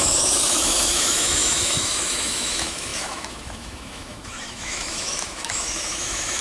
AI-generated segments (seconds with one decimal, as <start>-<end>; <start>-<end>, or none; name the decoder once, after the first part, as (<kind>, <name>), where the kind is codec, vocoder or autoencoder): 0.0-6.4 (autoencoder, DAC-VAE)